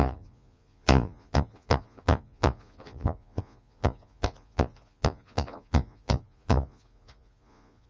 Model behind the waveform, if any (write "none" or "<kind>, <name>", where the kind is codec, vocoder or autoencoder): vocoder, Vocos